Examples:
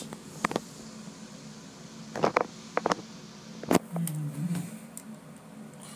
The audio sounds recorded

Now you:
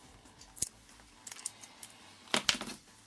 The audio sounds recorded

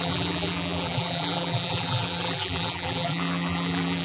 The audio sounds remade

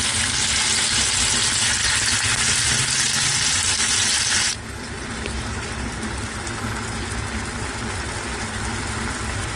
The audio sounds recorded